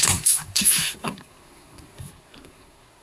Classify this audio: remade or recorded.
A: remade